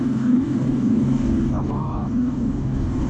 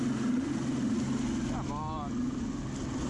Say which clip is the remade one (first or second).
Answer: first